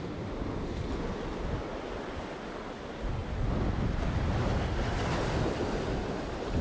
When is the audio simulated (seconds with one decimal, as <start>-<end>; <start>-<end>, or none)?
none